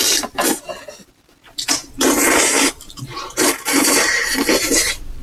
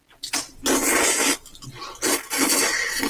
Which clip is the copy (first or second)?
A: first